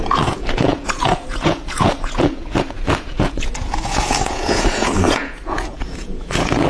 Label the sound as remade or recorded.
remade